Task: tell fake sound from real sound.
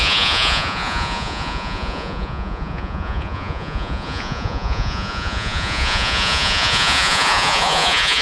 fake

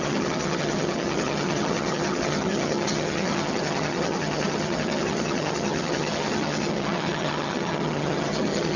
fake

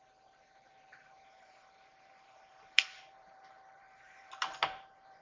fake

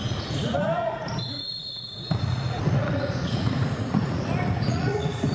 fake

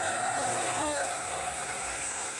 fake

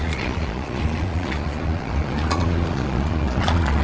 fake